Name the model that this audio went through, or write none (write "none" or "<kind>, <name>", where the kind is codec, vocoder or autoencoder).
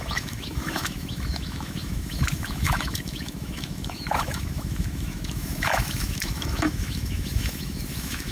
autoencoder, DAC-VAE